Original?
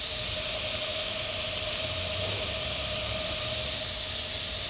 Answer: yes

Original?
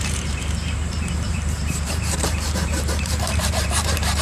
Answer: no